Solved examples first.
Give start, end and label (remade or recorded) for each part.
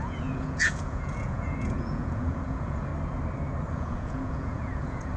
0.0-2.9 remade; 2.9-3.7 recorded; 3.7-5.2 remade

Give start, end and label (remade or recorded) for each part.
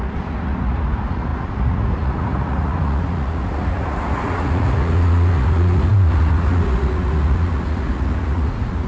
0.0-8.9 remade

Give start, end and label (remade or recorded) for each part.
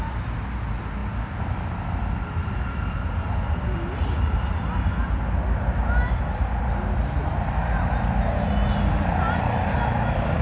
0.0-10.4 recorded